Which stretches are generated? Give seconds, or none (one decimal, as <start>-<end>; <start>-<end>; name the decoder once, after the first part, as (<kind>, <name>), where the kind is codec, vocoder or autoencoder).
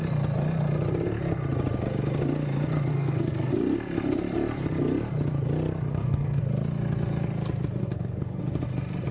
2.9-3.5 (codec, SNAC); 5.9-6.4; 7.8-8.4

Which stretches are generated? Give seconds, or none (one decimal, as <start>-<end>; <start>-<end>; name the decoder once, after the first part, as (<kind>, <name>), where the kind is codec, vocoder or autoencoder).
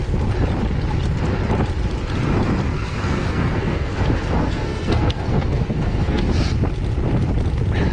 2.7-6.2 (codec, SNAC)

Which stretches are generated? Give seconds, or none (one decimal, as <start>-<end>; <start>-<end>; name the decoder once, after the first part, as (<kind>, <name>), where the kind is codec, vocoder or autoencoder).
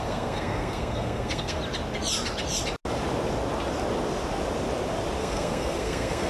0.0-1.6 (codec, SNAC); 5.2-6.3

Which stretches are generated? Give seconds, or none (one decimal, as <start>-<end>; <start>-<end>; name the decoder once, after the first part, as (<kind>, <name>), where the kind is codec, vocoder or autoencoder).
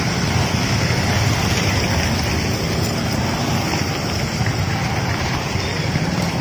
none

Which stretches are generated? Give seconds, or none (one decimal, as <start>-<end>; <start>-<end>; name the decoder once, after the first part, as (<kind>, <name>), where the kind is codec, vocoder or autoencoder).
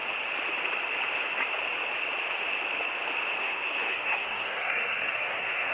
3.4-5.7 (codec, SNAC)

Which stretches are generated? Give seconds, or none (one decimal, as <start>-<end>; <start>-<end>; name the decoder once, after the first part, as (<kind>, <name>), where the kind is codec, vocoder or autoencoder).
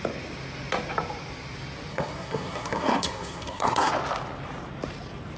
1.9-3.9 (codec, SNAC)